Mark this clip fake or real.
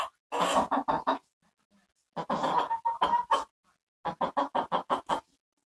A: real